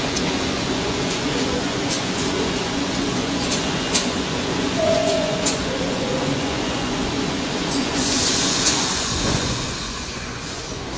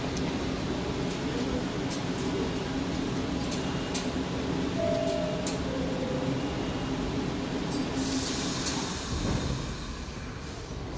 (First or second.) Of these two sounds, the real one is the second